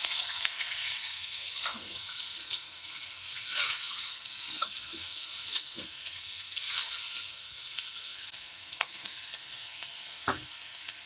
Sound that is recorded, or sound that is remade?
remade